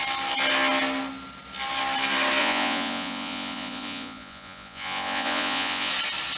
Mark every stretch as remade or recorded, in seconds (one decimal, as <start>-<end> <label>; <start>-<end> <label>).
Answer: 0.0-2.4 recorded; 2.4-5.9 remade; 5.9-6.4 recorded